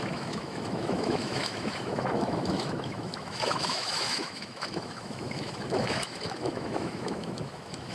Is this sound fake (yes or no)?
yes